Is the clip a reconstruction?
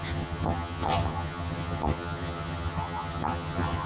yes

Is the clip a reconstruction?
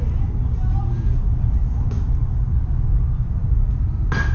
no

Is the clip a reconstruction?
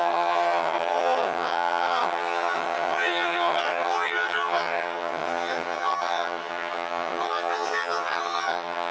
yes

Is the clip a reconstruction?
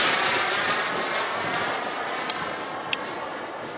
no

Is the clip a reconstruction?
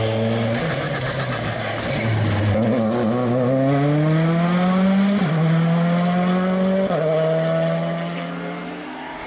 no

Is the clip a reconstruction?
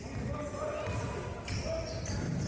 no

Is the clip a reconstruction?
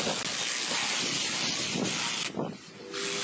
no